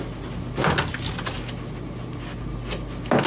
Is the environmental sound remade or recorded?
recorded